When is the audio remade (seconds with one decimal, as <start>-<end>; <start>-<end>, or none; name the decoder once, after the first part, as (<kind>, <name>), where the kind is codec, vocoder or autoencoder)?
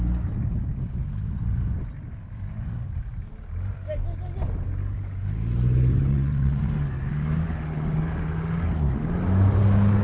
6.1-6.7 (vocoder, WaveNeXt)